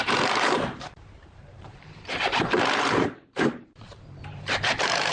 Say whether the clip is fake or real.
fake